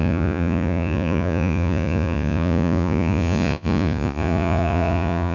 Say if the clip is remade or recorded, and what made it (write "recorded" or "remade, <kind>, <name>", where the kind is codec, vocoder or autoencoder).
remade, vocoder, Vocos